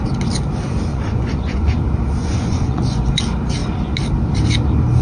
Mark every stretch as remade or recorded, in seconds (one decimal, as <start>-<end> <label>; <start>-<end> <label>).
0.0-0.9 recorded; 0.9-1.8 remade; 1.8-2.2 recorded; 2.2-3.2 remade; 3.2-5.0 recorded